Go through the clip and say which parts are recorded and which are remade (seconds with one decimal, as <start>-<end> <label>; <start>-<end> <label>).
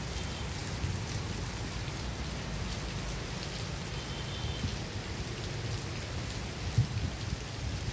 0.0-7.9 recorded